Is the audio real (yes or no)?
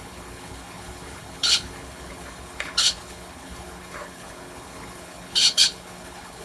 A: no